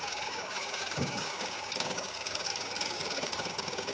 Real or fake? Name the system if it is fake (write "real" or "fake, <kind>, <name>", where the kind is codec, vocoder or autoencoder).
fake, codec, DAC